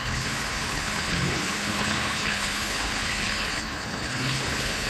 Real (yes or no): no